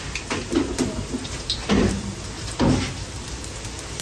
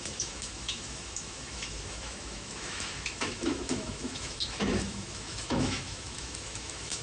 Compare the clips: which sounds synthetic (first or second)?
second